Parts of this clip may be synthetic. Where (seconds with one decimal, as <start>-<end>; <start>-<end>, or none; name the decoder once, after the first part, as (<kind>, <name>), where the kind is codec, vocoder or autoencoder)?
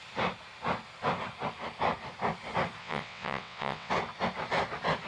2.8-3.9 (vocoder, WaveNeXt)